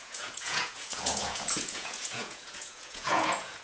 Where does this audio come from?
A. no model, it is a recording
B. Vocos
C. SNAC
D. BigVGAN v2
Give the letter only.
B